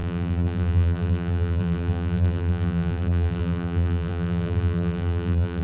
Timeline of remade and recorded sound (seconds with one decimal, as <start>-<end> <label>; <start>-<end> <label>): 0.0-5.6 remade